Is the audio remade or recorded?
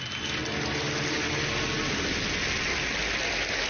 recorded